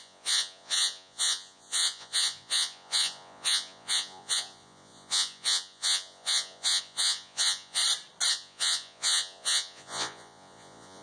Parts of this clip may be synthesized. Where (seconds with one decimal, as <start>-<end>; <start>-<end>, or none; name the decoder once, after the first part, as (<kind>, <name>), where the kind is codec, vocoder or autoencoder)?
0.0-7.8 (vocoder, Vocos); 8.3-11.0